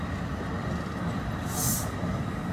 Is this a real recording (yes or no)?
yes